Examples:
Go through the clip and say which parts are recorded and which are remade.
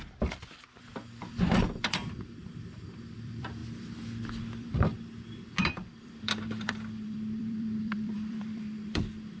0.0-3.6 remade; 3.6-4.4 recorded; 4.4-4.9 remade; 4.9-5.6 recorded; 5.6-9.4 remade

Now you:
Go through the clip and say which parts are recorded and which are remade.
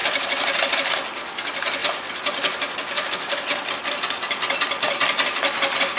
0.0-6.0 recorded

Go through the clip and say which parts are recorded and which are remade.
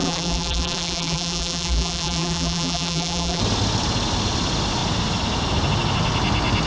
0.0-3.4 remade; 3.4-6.7 recorded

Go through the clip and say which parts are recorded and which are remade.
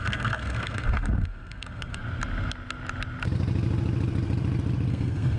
0.0-2.0 remade; 2.0-4.9 recorded; 4.9-5.4 remade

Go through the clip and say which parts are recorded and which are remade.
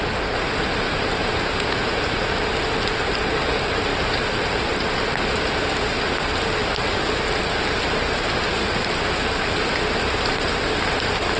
0.0-1.2 recorded; 1.2-2.2 remade; 2.2-11.4 recorded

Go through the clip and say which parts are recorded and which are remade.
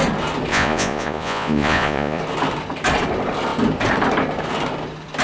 0.0-0.5 recorded; 0.5-2.2 remade; 2.2-5.2 recorded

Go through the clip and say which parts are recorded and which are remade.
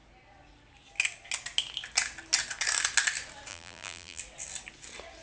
0.0-3.5 recorded; 3.5-4.2 remade; 4.2-5.2 recorded